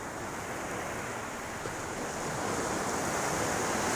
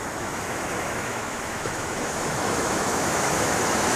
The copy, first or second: second